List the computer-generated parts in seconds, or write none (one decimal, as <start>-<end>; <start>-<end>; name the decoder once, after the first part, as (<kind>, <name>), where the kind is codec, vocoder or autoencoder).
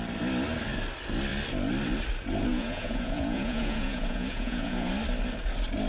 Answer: 2.5-4.9 (vocoder, Vocos)